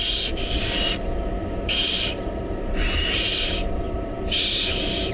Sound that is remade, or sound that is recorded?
remade